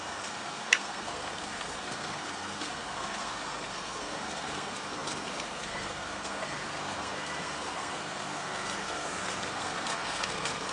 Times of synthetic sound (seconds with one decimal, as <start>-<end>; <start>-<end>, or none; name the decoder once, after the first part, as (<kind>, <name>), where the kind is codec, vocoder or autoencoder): 0.0-10.7 (codec, SNAC)

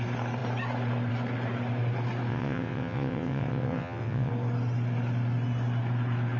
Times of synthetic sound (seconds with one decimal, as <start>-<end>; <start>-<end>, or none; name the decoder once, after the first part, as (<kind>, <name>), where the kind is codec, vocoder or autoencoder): 2.3-4.3 (vocoder, WaveNeXt)